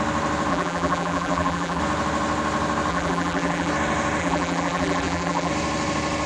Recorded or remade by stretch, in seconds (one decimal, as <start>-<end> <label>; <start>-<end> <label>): 0.0-0.5 recorded; 0.5-1.8 remade; 1.8-2.9 recorded; 2.9-3.7 remade; 3.7-4.2 recorded; 4.2-5.5 remade; 5.5-6.3 recorded